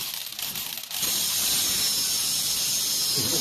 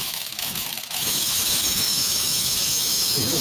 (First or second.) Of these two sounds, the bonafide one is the first